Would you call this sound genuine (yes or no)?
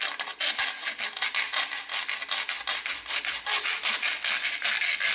yes